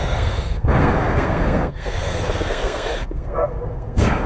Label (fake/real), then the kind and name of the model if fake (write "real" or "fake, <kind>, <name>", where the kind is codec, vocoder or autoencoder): fake, codec, SNAC